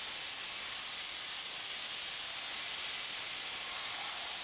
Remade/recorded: recorded